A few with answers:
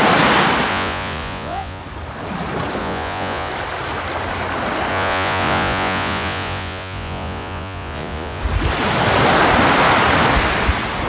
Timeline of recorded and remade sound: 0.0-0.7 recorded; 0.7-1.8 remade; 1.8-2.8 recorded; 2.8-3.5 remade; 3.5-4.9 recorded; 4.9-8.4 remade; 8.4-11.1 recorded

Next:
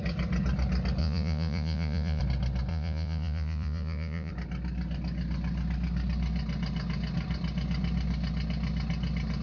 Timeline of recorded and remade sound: 0.0-1.0 recorded; 1.0-2.2 remade; 2.2-2.7 recorded; 2.7-4.3 remade; 4.3-9.4 recorded

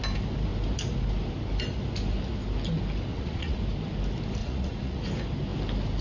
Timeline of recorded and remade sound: 0.0-3.1 recorded; 3.1-3.6 remade; 3.6-4.4 recorded; 4.4-5.0 remade; 5.0-6.0 recorded

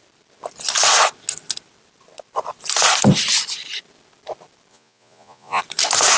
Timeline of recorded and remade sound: 0.0-4.7 recorded; 4.7-5.6 remade; 5.6-6.2 recorded

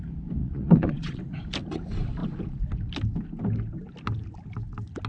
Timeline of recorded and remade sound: 0.0-0.4 recorded; 0.4-1.2 remade; 1.2-5.1 recorded

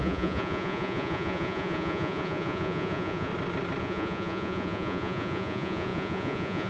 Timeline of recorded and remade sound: 0.0-3.3 remade; 3.3-3.8 recorded; 3.8-6.7 remade

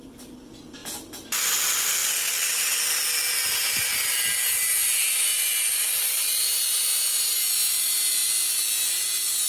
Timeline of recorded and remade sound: 0.0-9.5 recorded